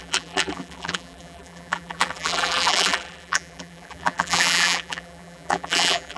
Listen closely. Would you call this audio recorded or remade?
remade